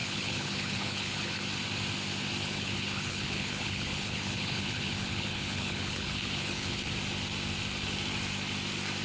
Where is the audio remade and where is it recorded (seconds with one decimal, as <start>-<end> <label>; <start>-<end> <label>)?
0.0-1.4 remade; 1.4-2.4 recorded; 2.4-6.9 remade; 6.9-9.0 recorded